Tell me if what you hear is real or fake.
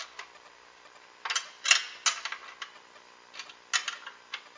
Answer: real